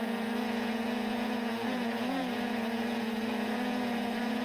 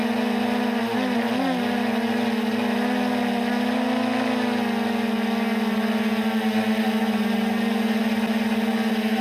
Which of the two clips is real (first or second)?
second